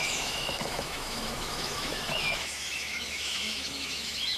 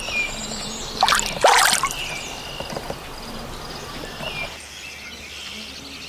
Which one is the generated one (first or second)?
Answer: first